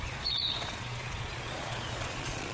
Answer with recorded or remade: remade